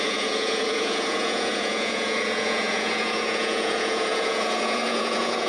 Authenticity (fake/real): fake